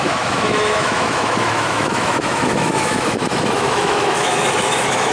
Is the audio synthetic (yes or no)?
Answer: yes